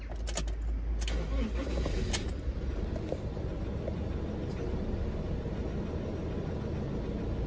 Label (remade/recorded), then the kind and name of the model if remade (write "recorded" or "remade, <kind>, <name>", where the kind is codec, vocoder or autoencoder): recorded